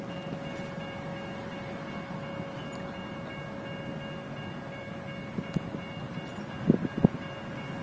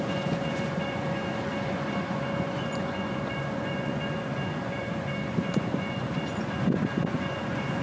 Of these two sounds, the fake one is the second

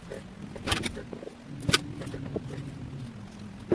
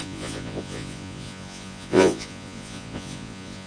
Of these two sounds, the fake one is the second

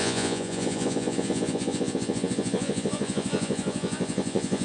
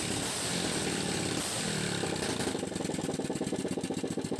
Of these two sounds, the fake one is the first